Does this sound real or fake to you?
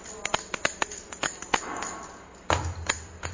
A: real